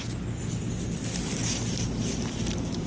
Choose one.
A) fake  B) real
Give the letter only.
B